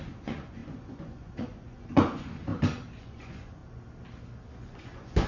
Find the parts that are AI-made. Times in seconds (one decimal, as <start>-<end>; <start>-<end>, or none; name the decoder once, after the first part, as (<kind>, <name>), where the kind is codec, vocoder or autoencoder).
0.0-2.5 (vocoder, Vocos); 3.0-3.6; 4.5-5.3